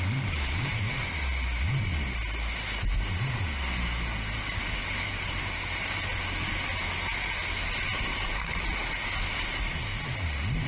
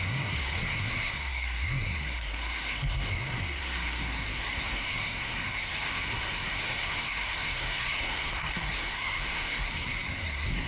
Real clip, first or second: first